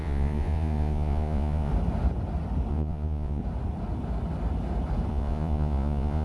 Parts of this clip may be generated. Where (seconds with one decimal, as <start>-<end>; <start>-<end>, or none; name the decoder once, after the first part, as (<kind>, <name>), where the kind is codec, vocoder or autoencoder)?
0.0-1.7 (vocoder, Vocos); 2.7-3.4; 5.1-6.2